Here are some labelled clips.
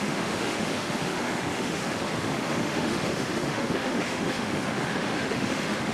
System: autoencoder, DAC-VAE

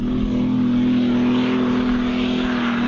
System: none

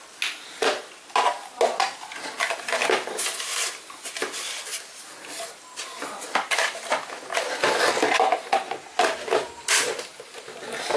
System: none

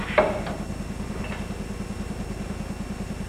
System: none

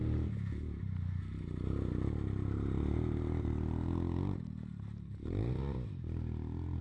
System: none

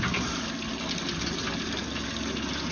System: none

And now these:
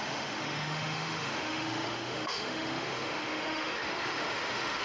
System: autoencoder, DAC-VAE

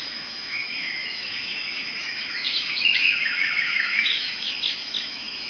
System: autoencoder, DAC-VAE